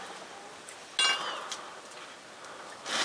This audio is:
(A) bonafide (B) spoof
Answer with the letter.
A